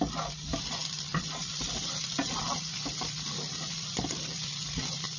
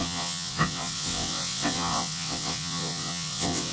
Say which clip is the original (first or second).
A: first